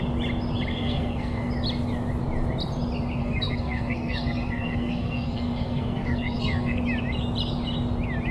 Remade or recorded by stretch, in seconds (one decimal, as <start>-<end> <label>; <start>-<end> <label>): 0.0-0.7 recorded; 0.7-1.5 remade; 1.5-3.2 recorded; 3.2-6.8 remade; 6.8-8.3 recorded